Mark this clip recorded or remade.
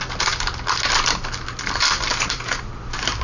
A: recorded